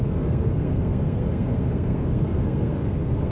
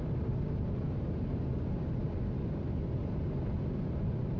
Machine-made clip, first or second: first